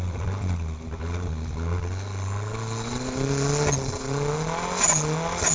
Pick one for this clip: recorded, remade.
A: recorded